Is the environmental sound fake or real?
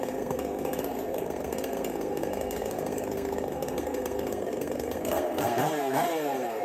fake